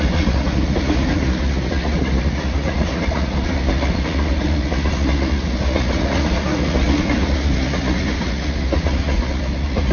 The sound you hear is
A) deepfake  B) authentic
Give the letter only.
A